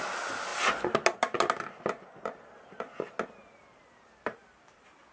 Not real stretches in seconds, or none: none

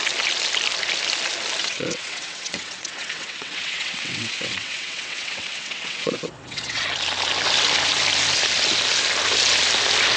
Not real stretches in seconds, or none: 1.6-6.8

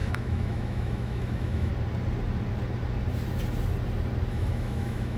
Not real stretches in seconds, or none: 0.0-1.7; 4.3-5.2

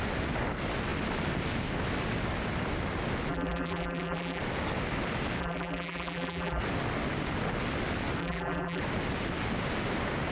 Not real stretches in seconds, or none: 3.3-4.4; 5.4-6.6; 8.2-8.8

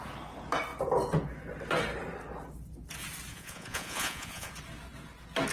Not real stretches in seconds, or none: 3.3-4.5